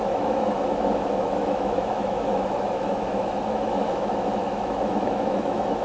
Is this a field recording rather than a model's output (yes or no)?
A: no